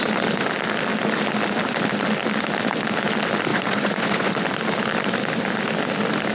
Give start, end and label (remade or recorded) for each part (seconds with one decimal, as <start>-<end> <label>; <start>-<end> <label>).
0.0-3.5 recorded; 3.5-4.3 remade; 4.3-6.3 recorded